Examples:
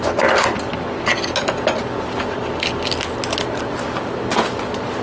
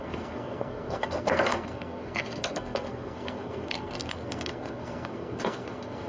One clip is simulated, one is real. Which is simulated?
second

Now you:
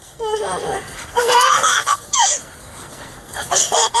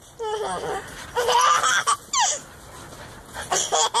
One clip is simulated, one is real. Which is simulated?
first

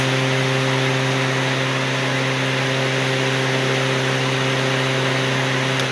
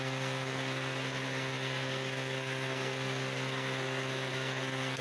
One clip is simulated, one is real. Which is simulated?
second